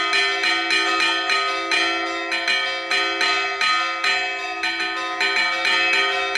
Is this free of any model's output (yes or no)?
yes